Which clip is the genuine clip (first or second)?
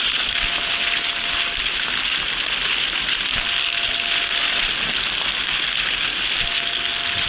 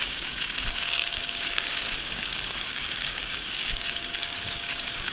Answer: first